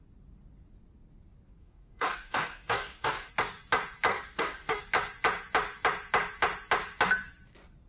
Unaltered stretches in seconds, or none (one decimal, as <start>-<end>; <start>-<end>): 0.0-1.6; 3.3-4.1; 4.8-7.9

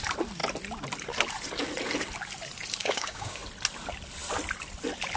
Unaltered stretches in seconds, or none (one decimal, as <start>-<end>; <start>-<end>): 0.0-2.8; 3.4-5.2